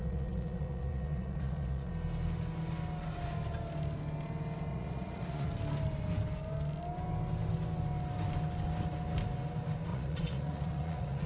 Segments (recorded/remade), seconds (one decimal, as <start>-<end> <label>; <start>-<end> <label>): 0.0-1.9 remade; 1.9-4.7 recorded; 4.7-5.5 remade; 5.5-9.9 recorded; 9.9-11.3 remade